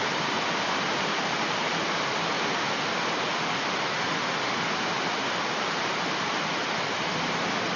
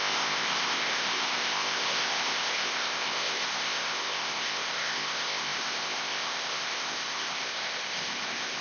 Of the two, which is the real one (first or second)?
first